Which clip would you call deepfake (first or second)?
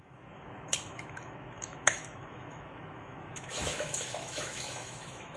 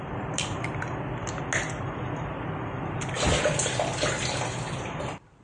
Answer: first